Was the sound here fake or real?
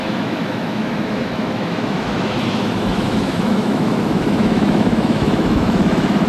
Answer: fake